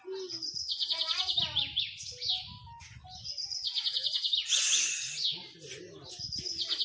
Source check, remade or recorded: recorded